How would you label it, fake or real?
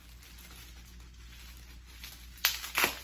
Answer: real